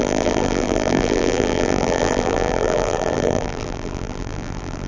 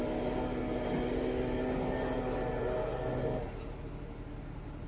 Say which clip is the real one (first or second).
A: second